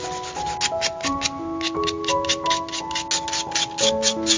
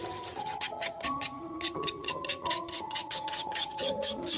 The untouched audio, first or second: first